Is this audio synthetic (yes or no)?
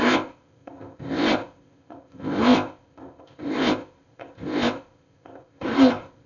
yes